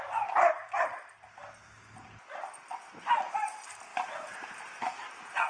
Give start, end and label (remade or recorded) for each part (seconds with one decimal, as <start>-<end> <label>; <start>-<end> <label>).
0.0-0.6 recorded; 0.6-1.1 remade; 1.1-3.9 recorded; 3.9-5.5 remade